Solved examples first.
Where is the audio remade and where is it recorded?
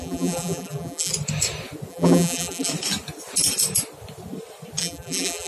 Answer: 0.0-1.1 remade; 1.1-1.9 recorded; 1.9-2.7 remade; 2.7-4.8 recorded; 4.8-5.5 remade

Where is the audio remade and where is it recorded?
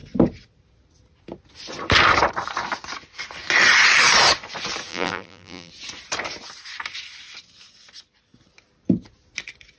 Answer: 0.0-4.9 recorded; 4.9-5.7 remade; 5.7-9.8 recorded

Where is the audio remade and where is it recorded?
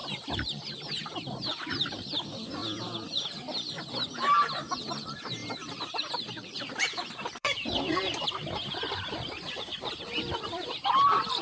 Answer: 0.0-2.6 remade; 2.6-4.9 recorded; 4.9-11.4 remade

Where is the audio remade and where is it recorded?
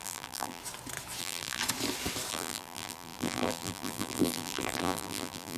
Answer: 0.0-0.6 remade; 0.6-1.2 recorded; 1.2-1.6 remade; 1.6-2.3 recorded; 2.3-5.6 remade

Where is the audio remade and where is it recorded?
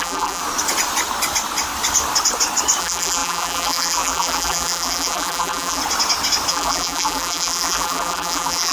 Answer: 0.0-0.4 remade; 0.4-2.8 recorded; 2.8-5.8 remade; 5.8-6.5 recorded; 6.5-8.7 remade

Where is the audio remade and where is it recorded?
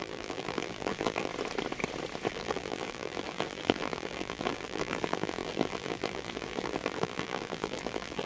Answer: 0.0-1.3 remade; 1.3-2.3 recorded; 2.3-8.3 remade